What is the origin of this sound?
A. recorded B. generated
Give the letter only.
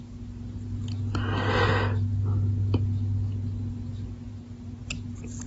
A